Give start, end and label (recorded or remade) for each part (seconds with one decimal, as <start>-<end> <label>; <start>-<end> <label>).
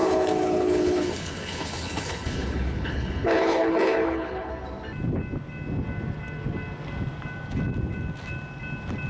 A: 0.0-4.5 remade; 4.5-9.1 recorded